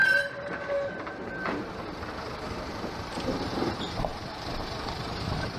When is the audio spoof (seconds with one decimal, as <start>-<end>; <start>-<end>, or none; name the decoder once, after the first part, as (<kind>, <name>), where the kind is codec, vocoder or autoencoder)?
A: 0.0-5.6 (vocoder, BigVGAN v2)